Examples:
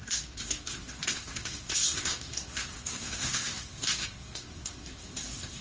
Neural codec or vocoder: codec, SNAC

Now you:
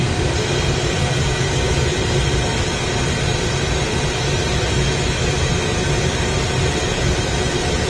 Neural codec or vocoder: none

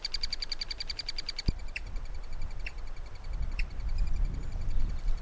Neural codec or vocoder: none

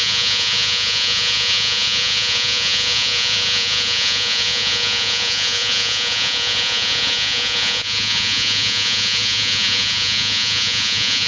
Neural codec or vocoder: vocoder, Vocos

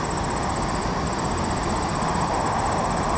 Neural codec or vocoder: none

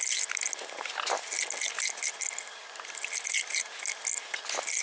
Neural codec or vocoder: none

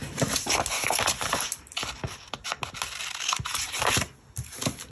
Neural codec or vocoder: none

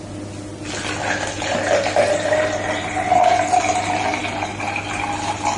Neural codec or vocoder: none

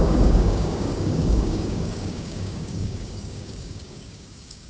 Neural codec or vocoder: codec, DAC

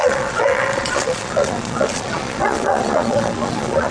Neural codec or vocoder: vocoder, Vocos